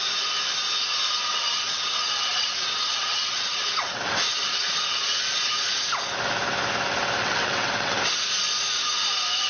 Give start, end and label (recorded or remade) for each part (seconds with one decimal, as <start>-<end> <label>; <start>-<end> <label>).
0.0-1.3 recorded; 1.3-5.0 remade; 5.0-7.2 recorded; 7.2-8.0 remade; 8.0-9.5 recorded